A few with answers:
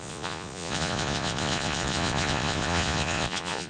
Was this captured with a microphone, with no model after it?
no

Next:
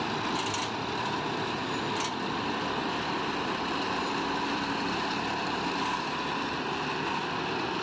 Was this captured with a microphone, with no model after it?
yes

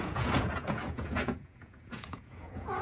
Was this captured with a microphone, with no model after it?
no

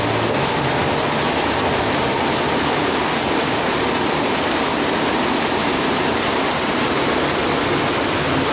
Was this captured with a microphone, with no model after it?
yes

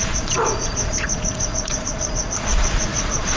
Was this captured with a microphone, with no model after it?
no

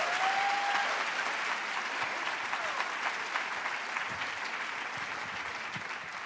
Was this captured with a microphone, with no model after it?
yes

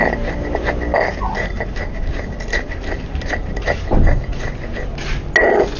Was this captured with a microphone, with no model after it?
yes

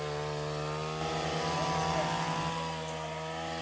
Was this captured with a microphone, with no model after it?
yes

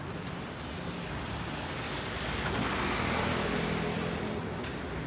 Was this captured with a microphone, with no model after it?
yes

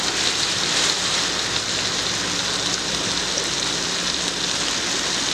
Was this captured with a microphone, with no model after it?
yes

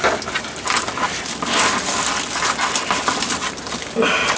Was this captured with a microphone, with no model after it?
yes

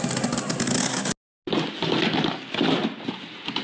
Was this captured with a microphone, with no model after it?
yes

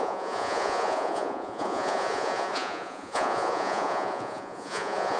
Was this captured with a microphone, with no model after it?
no